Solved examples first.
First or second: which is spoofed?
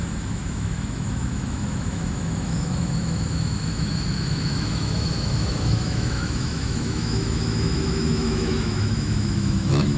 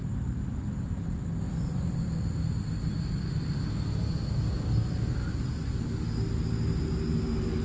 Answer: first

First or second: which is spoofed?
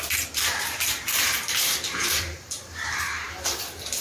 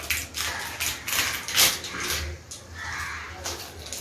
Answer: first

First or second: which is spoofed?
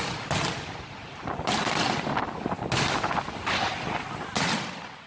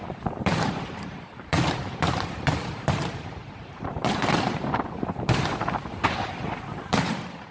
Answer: second